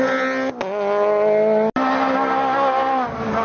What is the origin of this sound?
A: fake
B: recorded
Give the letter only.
B